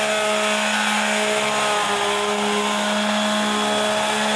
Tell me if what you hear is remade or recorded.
recorded